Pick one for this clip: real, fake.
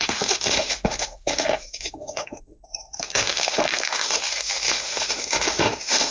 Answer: fake